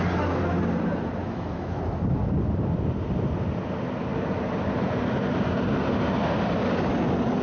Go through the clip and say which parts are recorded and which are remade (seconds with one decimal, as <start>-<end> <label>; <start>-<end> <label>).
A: 0.0-1.2 recorded; 1.2-1.8 remade; 1.8-7.4 recorded